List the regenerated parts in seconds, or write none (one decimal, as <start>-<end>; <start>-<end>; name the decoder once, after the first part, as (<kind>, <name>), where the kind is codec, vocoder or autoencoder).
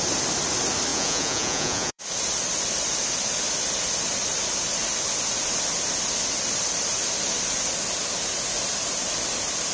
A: 0.9-2.0 (vocoder, Vocos)